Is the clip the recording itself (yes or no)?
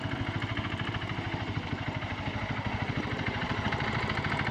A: yes